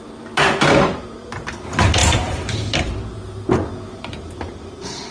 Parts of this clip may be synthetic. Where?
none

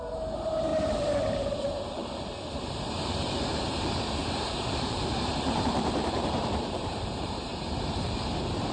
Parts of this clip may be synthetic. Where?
0.0-7.5 (vocoder, BigVGAN v2)

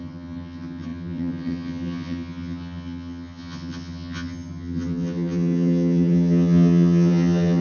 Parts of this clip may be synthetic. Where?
0.0-7.6 (vocoder, HiFi-GAN)

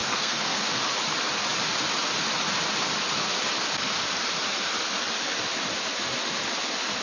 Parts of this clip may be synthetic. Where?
0.0-0.8 (codec, SNAC)